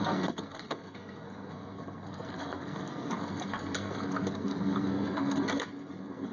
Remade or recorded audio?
remade